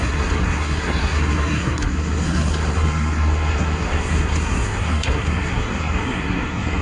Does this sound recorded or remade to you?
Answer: remade